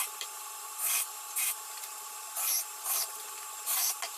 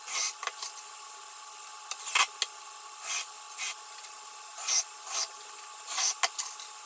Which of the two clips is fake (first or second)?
first